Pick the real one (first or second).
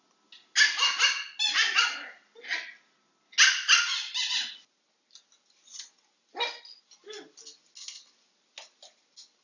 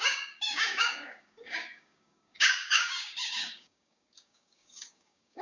first